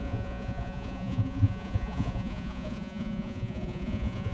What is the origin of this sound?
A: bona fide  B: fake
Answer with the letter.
B